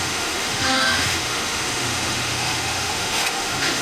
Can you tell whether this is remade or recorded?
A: remade